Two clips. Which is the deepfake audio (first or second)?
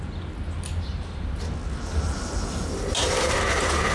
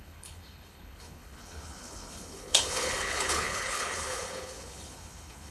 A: second